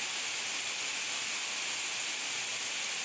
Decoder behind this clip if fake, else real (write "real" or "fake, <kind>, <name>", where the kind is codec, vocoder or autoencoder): real